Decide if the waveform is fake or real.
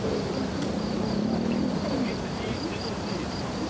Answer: fake